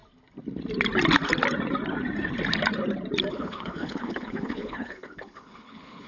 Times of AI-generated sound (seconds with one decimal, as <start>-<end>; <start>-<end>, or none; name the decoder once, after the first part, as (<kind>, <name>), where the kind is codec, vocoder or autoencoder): 3.3-6.1 (codec, HILCodec)